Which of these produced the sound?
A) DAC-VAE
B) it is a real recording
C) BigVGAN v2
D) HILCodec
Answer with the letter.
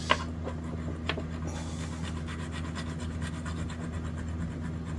B